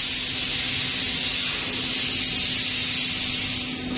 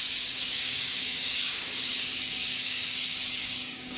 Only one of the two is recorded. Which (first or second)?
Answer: first